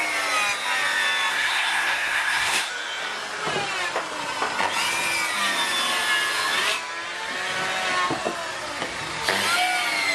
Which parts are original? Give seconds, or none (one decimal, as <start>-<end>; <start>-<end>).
0.0-1.3; 2.7-10.1